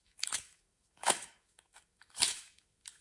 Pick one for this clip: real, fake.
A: fake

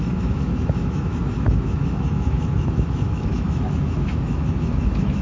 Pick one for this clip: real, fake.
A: fake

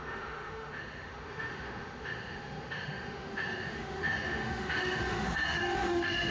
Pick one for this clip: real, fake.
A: fake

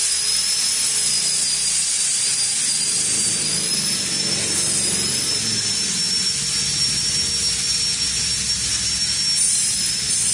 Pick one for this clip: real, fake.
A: real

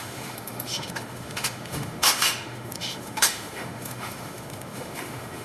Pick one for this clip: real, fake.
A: fake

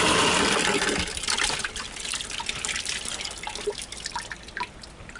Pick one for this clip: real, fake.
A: real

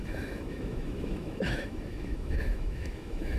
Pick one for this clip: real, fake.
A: fake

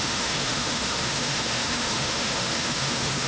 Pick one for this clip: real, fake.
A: fake